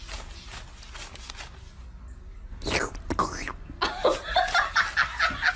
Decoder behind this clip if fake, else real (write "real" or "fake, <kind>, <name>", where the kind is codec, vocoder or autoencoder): real